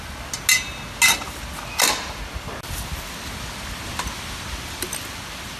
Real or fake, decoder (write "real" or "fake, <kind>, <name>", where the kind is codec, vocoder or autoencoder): real